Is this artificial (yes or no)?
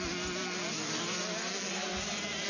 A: no